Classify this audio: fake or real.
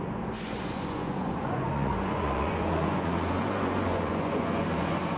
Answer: fake